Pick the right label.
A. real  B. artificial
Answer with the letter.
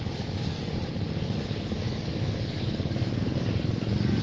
B